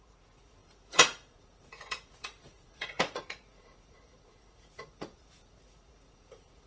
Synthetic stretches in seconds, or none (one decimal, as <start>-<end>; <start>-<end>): 0.0-6.7